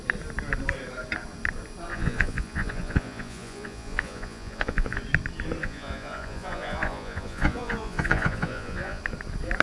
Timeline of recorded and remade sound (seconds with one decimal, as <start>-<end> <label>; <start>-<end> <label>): 0.0-1.9 recorded; 1.9-5.0 remade; 5.0-5.6 recorded; 5.6-9.0 remade; 9.0-9.6 recorded